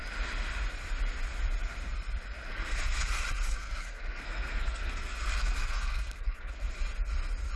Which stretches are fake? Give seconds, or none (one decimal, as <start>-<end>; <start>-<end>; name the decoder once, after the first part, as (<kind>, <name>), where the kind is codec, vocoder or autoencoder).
2.5-3.1 (codec, SNAC); 3.6-6.7